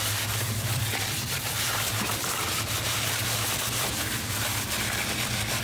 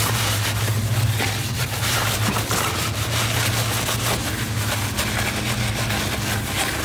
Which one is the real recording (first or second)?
second